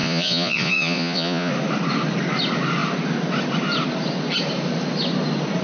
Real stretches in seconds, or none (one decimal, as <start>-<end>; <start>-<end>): 1.5-5.6